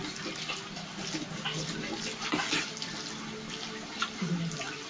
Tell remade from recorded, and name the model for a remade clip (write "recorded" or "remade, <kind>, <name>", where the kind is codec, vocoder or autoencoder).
recorded